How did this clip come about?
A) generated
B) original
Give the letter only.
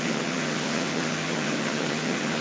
A